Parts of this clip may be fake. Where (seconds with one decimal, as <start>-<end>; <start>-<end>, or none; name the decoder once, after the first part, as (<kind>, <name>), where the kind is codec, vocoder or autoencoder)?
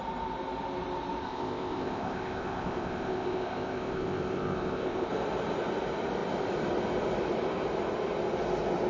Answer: 1.2-5.1 (codec, ZipCodec)